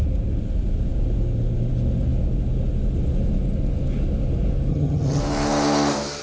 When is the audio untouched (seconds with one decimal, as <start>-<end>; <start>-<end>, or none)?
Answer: 0.0-4.7; 5.2-6.2